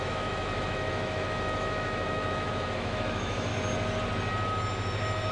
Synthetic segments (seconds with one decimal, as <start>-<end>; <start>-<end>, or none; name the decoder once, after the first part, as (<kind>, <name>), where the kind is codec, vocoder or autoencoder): 0.0-3.5 (autoencoder, DAC-VAE)